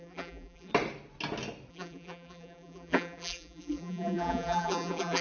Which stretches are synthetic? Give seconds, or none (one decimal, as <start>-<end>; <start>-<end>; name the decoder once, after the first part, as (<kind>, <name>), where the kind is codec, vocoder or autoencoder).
0.0-0.7 (vocoder, BigVGAN v2); 1.7-5.2